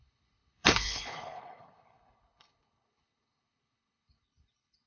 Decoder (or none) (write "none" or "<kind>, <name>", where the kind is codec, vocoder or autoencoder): codec, HILCodec